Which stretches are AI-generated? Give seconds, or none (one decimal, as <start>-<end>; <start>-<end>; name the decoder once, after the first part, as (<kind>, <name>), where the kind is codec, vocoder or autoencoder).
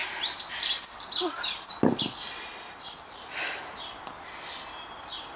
none